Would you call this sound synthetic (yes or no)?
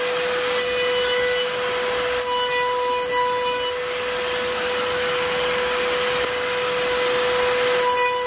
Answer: no